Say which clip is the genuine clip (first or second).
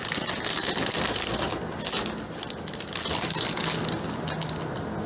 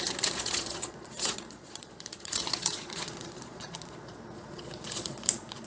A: first